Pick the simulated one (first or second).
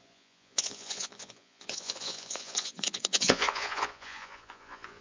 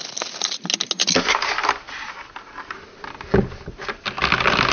first